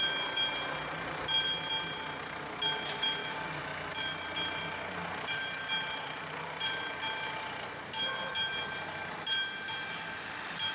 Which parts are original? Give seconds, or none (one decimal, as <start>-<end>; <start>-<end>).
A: 0.0-3.2; 3.9-10.7